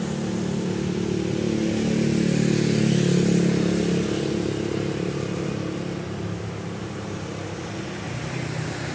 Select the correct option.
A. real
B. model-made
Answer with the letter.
A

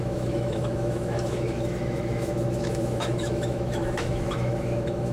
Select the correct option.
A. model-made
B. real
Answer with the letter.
A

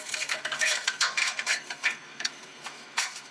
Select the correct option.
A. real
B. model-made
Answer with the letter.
B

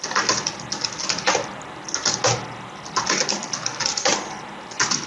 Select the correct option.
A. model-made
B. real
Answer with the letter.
B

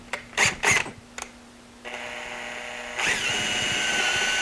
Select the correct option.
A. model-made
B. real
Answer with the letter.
B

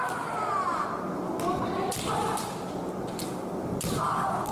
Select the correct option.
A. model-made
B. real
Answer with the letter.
B